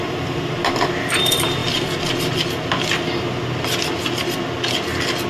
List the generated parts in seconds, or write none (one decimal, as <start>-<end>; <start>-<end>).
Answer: 0.0-1.6; 4.7-5.3